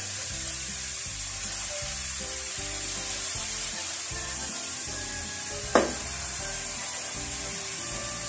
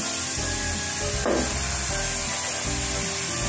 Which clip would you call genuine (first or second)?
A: second